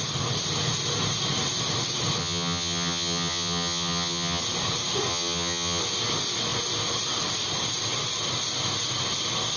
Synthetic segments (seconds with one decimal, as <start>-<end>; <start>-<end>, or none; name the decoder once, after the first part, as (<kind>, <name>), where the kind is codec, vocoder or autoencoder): 2.2-4.4 (vocoder, HiFi-GAN); 5.1-5.8